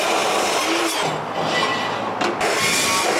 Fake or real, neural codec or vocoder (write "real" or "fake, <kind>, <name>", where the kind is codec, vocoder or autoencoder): real